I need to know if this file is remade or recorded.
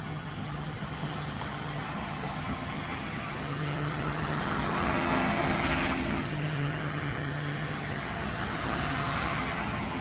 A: remade